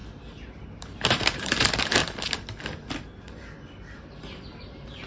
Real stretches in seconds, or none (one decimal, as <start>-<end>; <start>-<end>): 0.0-0.8; 2.0-4.2